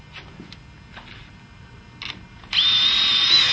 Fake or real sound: real